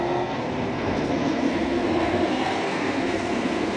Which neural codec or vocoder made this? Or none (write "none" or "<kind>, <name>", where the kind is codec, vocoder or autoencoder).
codec, SNAC